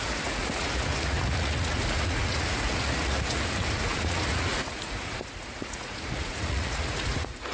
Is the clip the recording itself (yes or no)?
no